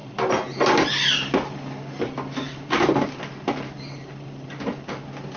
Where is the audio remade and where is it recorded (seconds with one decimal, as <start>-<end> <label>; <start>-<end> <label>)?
0.0-5.4 recorded